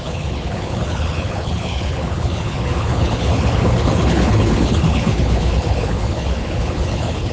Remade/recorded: remade